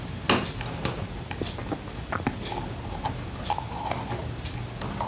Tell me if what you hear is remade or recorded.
recorded